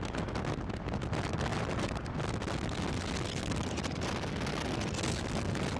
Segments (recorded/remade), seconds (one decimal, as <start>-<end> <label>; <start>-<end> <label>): 0.0-5.8 recorded